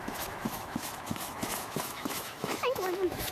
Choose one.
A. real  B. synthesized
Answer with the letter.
B